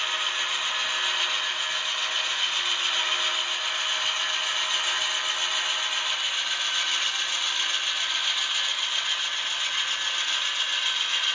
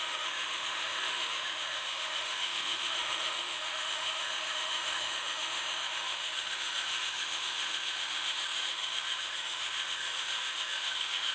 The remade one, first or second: second